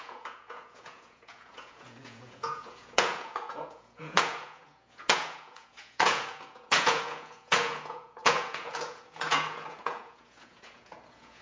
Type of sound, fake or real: fake